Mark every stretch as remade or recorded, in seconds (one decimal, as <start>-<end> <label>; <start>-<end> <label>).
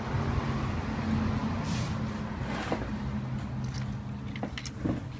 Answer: 0.0-5.2 recorded